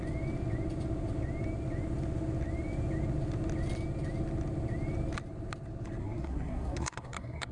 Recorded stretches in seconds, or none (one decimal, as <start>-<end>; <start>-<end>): 0.0-6.0